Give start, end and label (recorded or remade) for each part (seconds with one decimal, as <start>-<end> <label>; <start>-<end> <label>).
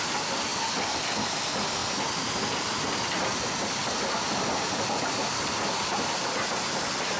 0.0-7.2 recorded